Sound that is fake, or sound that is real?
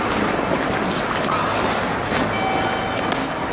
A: real